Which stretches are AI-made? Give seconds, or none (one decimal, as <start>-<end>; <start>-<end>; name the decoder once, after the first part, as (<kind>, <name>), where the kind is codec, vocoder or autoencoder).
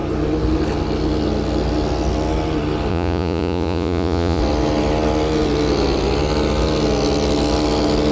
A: 2.9-4.4 (vocoder, Vocos)